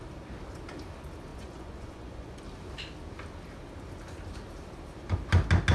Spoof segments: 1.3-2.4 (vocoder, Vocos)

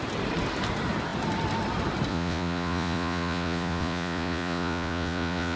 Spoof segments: 2.1-5.6 (vocoder, Vocos)

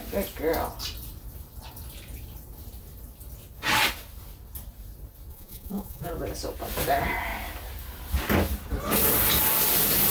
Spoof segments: 5.3-6.1 (vocoder, Vocos)

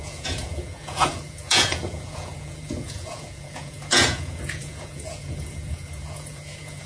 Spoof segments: 0.0-6.9 (vocoder, Vocos)

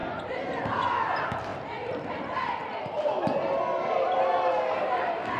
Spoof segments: none